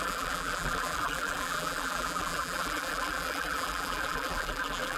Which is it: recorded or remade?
remade